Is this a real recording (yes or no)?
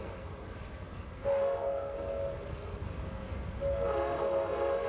no